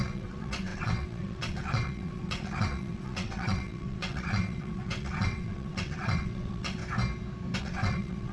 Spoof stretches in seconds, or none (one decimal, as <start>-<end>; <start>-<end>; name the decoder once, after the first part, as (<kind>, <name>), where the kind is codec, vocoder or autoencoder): 0.0-6.8 (vocoder, WaveNeXt); 7.6-8.3